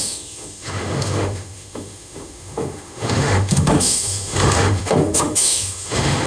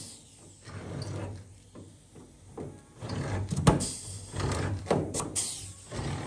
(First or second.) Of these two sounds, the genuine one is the second